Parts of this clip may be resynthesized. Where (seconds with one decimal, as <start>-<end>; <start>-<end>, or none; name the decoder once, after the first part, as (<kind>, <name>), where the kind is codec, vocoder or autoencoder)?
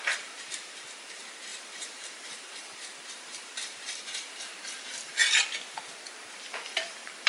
0.0-5.2 (vocoder, BigVGAN v2); 6.5-7.3